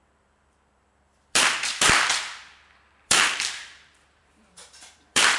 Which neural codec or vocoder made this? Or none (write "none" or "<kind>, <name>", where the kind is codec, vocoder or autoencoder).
vocoder, BigVGAN v2